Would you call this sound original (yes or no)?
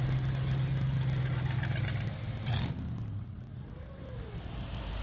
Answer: yes